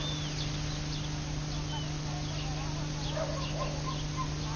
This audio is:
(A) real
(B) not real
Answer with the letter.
A